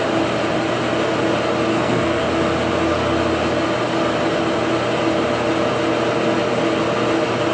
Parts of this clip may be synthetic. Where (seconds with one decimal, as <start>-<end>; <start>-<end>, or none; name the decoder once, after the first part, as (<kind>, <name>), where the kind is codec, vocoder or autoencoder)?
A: 1.7-2.2 (codec, SNAC)